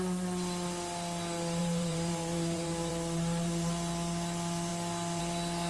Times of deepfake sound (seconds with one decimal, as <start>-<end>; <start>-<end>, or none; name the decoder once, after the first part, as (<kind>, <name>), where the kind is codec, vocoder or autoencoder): 1.6-2.9 (vocoder, BigVGAN v2)